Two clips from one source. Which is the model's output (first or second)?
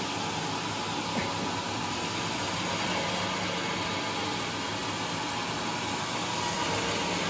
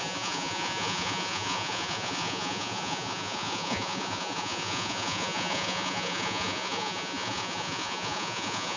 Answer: second